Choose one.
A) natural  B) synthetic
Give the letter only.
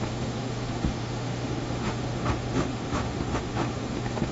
B